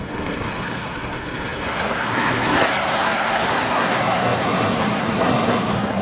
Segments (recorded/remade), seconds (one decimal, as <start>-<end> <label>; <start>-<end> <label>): 0.0-6.0 remade